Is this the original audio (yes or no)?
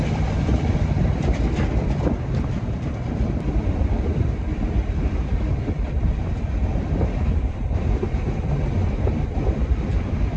no